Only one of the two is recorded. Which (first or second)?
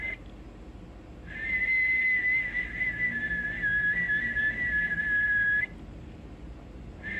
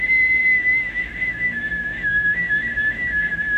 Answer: first